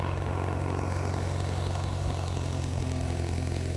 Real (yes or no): no